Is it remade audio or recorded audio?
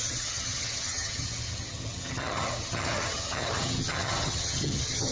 remade